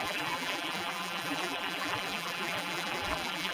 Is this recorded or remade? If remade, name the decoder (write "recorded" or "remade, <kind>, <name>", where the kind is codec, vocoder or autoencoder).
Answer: remade, vocoder, BigVGAN v2